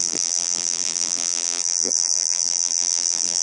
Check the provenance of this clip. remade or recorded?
remade